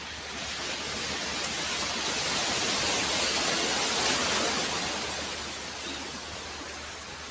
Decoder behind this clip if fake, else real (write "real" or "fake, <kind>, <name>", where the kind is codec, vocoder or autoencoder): real